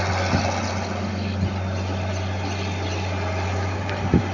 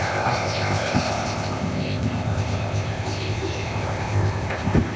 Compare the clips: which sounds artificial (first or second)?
second